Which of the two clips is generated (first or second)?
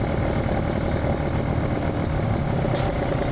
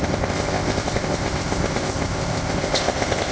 second